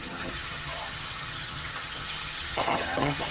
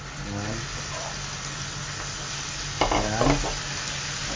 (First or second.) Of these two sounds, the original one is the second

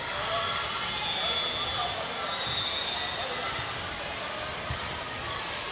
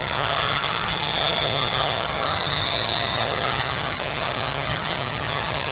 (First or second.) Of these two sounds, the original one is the first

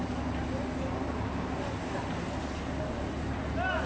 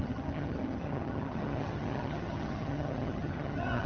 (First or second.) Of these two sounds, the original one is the first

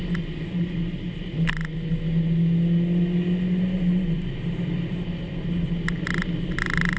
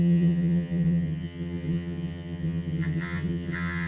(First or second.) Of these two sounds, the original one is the first